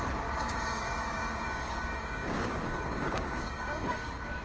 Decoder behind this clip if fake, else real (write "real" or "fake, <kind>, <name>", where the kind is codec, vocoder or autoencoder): fake, codec, DAC